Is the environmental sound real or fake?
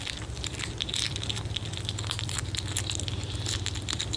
real